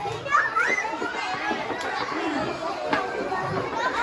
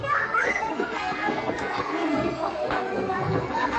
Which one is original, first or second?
first